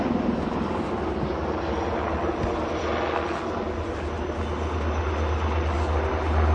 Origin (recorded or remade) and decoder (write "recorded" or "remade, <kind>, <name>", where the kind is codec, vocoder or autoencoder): recorded